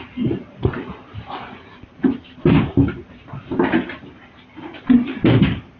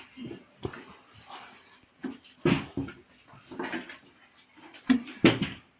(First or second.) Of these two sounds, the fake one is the first